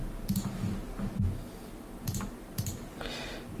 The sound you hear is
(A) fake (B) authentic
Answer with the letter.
B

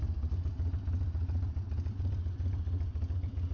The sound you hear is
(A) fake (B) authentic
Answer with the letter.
B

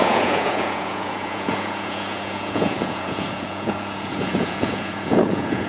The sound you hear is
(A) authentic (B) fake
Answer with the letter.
B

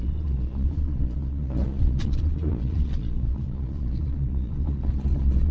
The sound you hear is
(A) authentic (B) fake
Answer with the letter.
B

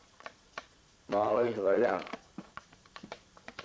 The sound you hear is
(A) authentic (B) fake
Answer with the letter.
B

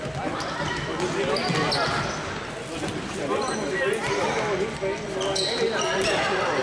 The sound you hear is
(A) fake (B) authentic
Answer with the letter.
B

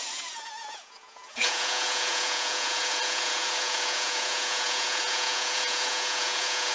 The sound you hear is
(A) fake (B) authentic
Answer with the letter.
A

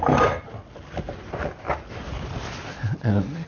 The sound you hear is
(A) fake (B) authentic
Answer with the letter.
B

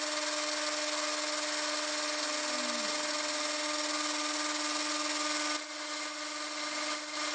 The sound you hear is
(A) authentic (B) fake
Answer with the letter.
A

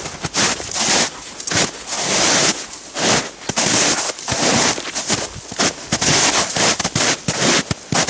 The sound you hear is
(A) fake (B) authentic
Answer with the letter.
B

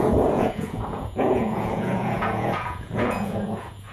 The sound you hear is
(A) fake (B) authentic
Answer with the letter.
A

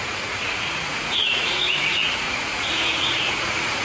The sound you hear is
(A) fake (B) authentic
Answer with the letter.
A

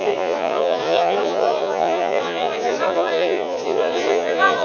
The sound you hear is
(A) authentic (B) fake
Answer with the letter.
B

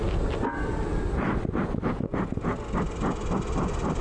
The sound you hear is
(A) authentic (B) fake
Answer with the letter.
A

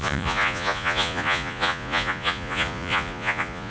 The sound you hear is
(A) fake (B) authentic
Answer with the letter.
A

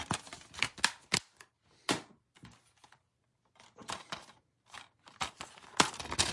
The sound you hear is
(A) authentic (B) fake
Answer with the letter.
A